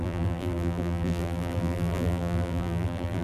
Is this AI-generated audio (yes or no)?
yes